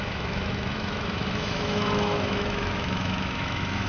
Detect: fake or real fake